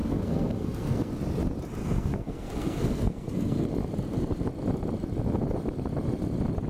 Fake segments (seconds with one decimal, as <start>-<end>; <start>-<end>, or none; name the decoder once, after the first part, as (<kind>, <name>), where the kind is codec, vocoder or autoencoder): 0.0-1.1 (codec, SNAC); 1.8-3.7